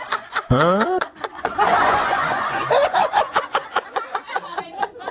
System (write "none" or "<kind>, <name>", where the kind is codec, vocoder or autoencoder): vocoder, Vocos